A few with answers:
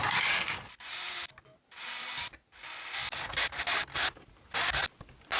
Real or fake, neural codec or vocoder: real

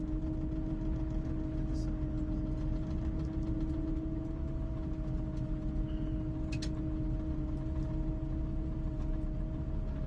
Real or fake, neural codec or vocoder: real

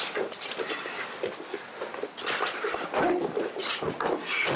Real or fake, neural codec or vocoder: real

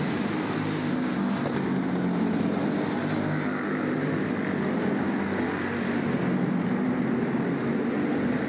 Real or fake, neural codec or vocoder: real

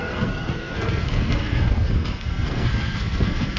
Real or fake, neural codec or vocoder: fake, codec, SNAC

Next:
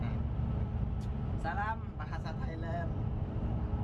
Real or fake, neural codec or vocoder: real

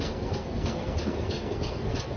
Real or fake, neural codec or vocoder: fake, codec, SNAC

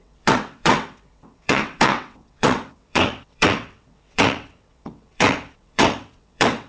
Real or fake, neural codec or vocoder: fake, vocoder, WaveNeXt